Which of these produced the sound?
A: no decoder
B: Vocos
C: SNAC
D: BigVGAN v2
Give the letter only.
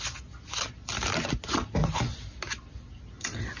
A